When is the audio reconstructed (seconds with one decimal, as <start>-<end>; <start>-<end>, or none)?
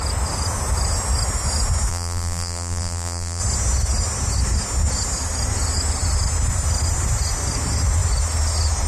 1.9-3.4